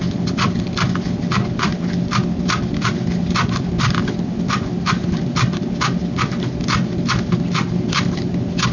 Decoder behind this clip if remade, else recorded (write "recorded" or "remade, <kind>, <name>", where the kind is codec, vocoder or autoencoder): recorded